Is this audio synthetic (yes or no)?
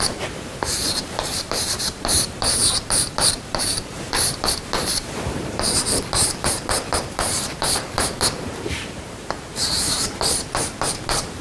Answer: yes